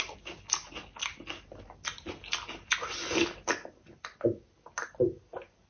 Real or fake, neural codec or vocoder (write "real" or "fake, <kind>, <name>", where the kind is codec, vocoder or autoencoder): real